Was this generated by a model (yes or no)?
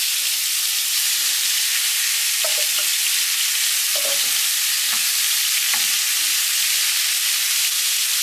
no